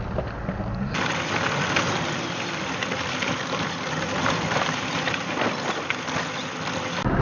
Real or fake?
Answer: real